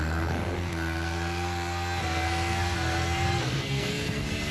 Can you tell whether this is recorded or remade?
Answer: remade